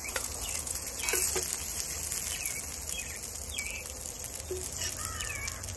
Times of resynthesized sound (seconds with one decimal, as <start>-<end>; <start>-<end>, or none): 0.0-1.0